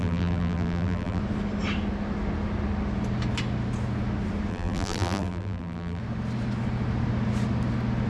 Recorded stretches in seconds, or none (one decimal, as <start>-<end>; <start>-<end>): 1.2-4.5; 6.0-8.1